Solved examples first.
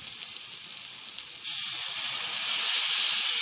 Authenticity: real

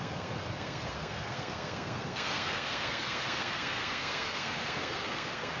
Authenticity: fake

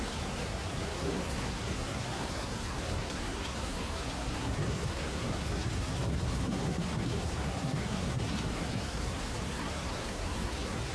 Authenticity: fake